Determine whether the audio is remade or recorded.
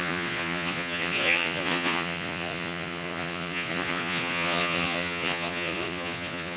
remade